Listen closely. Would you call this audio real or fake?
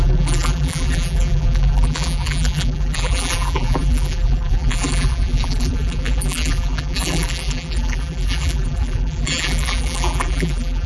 fake